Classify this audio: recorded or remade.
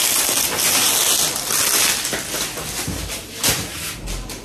recorded